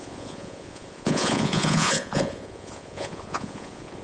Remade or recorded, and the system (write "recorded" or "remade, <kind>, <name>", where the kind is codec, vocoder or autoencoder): remade, vocoder, Vocos